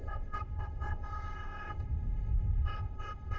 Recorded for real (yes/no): no